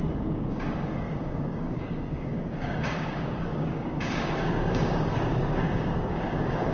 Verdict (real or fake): fake